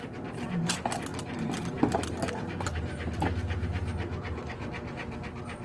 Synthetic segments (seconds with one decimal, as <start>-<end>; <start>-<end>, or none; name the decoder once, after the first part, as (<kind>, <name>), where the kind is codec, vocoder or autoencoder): none